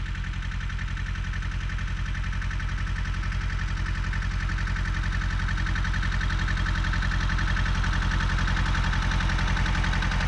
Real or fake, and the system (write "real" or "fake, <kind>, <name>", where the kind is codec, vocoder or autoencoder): real